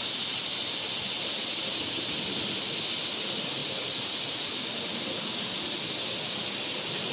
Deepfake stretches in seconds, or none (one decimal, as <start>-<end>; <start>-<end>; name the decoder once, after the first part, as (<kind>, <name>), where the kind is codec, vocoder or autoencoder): none